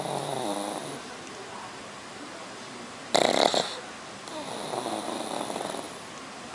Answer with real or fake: real